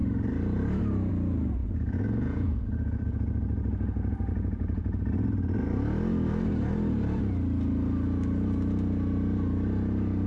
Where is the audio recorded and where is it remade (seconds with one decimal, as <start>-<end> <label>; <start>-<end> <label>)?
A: 0.0-1.6 recorded; 1.6-5.0 remade; 5.0-10.3 recorded

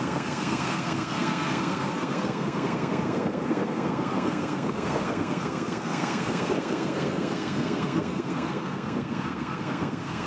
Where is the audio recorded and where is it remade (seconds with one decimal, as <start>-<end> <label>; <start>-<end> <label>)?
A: 0.0-10.3 remade

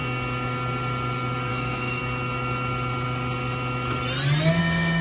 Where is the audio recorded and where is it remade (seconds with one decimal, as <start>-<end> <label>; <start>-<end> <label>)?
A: 0.0-1.5 recorded; 1.5-2.0 remade; 2.0-4.6 recorded; 4.6-5.0 remade